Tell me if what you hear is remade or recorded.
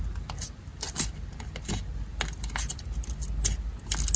recorded